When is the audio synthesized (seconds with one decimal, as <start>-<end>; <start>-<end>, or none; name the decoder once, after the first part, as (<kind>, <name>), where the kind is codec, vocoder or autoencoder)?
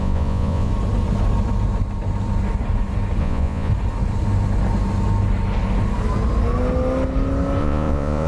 0.0-0.7 (vocoder, Vocos); 3.2-3.7; 7.6-8.3